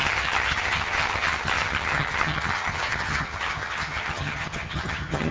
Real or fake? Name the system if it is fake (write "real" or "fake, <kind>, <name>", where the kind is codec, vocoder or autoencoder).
fake, vocoder, HiFi-GAN